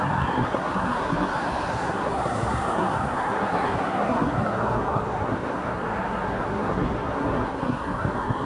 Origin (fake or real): fake